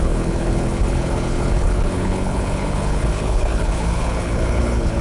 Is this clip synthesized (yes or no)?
yes